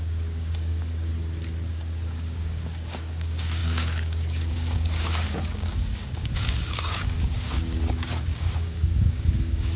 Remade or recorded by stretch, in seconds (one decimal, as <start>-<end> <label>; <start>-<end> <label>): 0.0-1.1 remade; 1.1-1.7 recorded; 1.7-9.8 remade